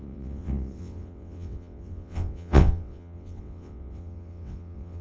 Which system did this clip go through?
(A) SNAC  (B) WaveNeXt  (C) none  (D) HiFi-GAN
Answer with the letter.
B